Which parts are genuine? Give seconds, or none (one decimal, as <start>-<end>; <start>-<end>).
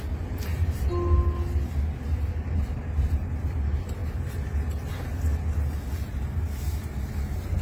0.0-7.6